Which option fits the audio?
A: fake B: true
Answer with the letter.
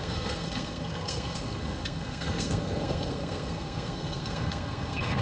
A